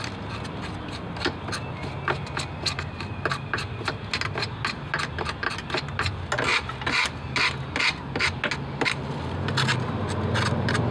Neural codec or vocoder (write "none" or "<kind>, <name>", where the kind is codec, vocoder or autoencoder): none